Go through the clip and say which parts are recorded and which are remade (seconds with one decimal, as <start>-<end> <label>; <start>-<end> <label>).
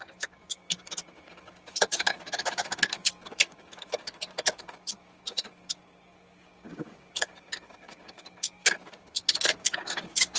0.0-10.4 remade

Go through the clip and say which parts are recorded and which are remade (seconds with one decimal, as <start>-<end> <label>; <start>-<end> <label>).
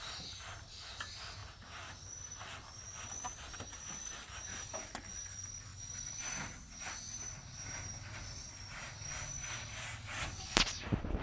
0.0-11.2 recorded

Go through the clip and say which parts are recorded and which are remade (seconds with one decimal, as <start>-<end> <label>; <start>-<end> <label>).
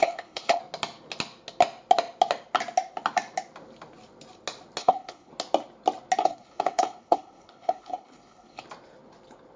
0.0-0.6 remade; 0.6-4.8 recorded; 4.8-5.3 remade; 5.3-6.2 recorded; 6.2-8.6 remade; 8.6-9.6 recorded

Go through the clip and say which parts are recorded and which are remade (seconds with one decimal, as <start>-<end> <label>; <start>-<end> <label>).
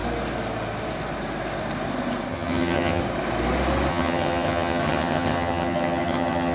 0.0-2.3 recorded; 2.3-3.0 remade; 3.0-3.9 recorded; 3.9-6.5 remade